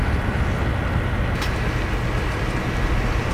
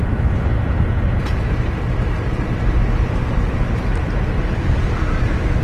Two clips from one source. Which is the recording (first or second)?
first